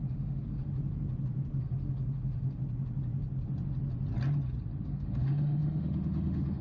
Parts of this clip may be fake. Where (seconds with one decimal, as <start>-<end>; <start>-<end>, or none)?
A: 0.0-0.8; 1.6-2.6; 4.8-6.6

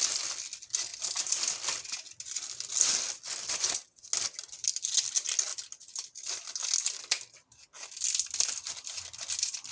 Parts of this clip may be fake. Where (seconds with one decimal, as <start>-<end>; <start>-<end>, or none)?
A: none

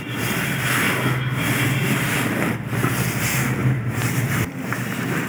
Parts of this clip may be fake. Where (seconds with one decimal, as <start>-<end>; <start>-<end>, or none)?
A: none

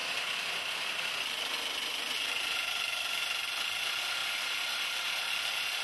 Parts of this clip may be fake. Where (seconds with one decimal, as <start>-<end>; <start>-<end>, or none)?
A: none

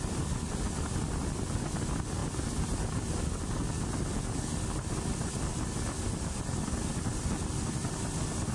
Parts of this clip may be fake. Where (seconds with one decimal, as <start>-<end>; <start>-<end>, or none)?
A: none

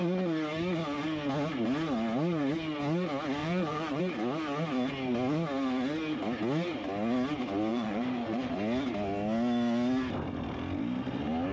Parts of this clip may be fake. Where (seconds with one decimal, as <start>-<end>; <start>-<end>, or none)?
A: 3.4-4.0; 7.7-8.5